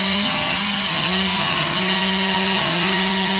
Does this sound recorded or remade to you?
remade